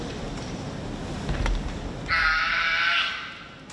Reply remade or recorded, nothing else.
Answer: recorded